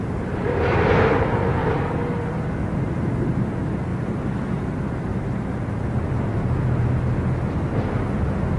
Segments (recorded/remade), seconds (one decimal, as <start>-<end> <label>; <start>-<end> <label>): 0.0-1.6 remade; 1.6-2.3 recorded; 2.3-3.9 remade; 3.9-4.6 recorded; 4.6-6.3 remade; 6.3-8.6 recorded